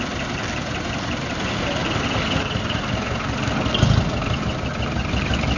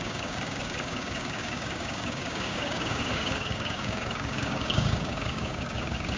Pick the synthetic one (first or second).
second